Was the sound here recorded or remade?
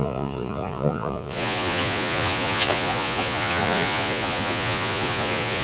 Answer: remade